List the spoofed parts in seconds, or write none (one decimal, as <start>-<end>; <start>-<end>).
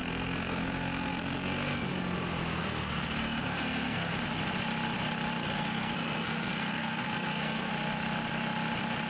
0.0-1.9; 2.6-4.1; 5.4-7.7